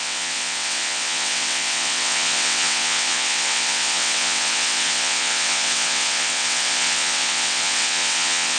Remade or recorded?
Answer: remade